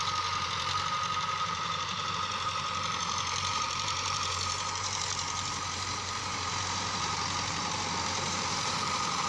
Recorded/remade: remade